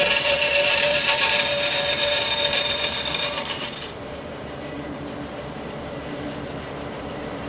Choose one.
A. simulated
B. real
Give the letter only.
A